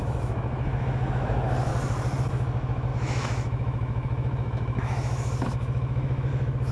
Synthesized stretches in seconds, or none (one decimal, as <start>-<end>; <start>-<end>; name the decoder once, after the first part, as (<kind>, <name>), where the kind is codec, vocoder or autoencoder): 0.0-1.7 (autoencoder, DAC-VAE); 2.3-6.7